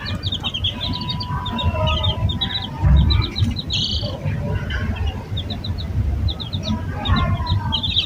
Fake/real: real